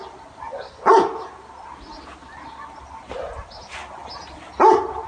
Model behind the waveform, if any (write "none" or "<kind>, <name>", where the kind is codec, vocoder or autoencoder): none